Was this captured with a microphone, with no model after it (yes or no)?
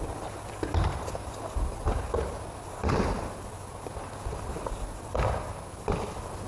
yes